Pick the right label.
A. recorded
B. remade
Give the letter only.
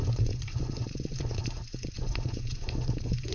B